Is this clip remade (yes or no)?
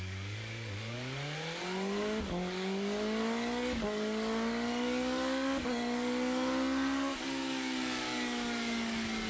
yes